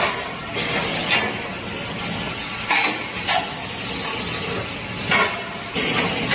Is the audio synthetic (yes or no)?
no